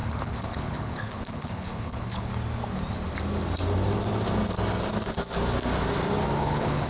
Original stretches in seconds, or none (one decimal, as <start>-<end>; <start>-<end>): 2.3-6.4